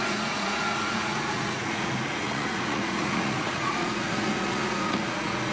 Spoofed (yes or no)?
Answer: yes